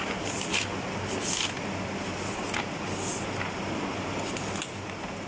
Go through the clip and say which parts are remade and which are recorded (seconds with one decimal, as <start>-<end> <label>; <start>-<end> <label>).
0.0-5.3 recorded